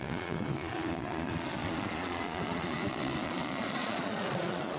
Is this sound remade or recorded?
remade